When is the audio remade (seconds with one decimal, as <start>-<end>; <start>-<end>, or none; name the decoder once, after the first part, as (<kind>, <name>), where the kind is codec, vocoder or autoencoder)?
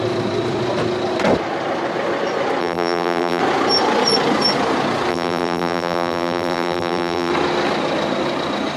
2.6-3.4 (vocoder, BigVGAN v2); 5.1-7.3